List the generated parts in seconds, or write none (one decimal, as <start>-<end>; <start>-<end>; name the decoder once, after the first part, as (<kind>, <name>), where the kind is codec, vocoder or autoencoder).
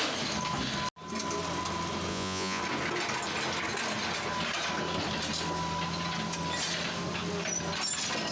2.1-2.6 (vocoder, Vocos)